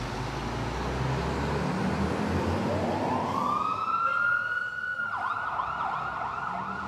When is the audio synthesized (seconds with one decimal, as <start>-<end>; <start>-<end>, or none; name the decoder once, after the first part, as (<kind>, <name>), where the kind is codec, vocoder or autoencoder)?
none

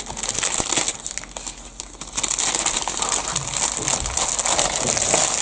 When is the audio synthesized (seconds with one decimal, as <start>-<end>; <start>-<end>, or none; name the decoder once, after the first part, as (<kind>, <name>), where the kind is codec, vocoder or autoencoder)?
none

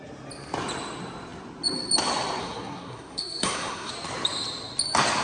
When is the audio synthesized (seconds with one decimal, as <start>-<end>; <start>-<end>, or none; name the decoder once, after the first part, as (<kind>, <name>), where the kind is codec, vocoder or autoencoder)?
2.4-3.9 (codec, SNAC)

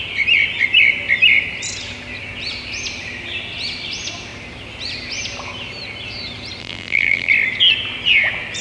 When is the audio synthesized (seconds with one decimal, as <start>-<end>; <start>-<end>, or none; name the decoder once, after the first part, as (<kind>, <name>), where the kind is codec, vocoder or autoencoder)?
6.6-7.3 (vocoder, BigVGAN v2)

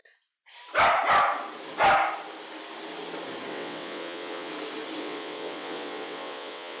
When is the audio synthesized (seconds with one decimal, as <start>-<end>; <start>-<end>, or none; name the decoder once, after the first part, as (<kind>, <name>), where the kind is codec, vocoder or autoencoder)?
3.5-4.5 (vocoder, WaveNeXt); 5.0-6.8

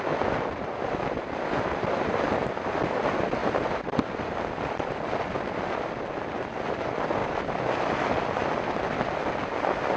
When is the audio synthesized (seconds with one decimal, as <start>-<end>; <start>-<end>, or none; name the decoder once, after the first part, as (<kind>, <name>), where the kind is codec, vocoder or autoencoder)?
none

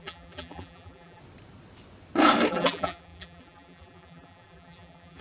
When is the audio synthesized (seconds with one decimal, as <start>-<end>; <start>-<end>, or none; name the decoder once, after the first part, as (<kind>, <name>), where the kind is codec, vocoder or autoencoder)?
0.0-1.2 (vocoder, BigVGAN v2); 2.5-5.2